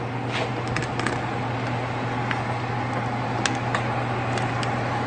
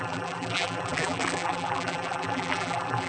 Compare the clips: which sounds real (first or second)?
first